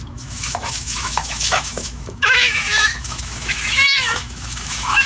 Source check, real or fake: fake